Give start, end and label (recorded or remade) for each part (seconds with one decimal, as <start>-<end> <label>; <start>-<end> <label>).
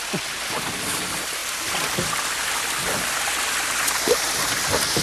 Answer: 0.0-1.4 recorded; 1.4-2.6 remade; 2.6-5.0 recorded